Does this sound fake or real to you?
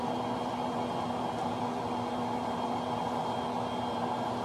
real